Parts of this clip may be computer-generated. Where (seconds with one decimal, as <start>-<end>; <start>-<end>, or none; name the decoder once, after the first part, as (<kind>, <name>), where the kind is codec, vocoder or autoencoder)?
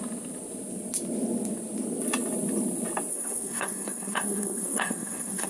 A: 3.1-5.5 (codec, SNAC)